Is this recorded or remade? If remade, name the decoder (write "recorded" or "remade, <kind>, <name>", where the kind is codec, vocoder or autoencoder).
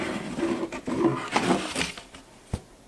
recorded